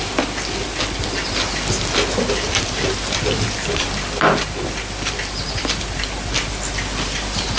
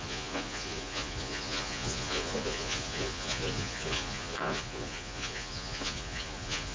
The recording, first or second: first